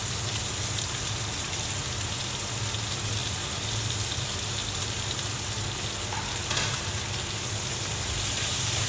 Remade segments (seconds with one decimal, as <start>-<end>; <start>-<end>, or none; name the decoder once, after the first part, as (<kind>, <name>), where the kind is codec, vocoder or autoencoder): none